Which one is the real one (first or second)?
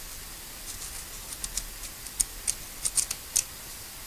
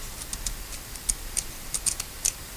first